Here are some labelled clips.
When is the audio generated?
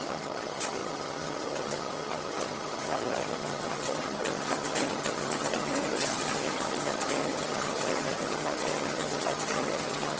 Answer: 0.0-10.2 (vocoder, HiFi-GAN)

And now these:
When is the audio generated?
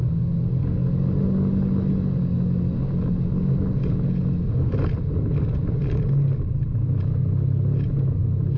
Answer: 6.7-7.2 (vocoder, BigVGAN v2)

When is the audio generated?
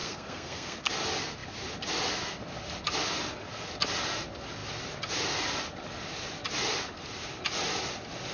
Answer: 0.0-0.9 (codec, SNAC)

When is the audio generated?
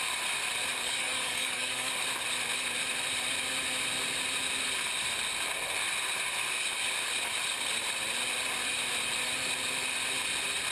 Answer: 0.7-1.9 (codec, DAC)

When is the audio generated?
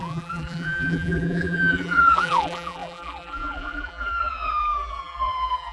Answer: 0.0-5.7 (vocoder, BigVGAN v2)